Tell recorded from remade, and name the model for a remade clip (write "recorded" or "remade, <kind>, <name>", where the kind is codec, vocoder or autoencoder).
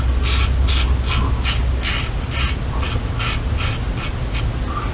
recorded